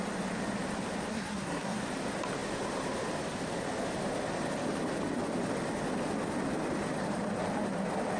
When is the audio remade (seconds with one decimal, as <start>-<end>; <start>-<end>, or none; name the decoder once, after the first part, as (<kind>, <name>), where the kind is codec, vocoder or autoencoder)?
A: 1.1-1.8 (codec, SNAC)